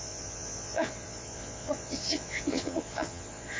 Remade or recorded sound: remade